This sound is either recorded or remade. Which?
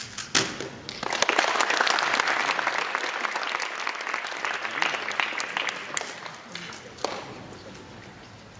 recorded